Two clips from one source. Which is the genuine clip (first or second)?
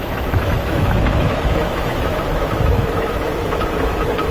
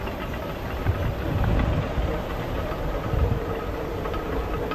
second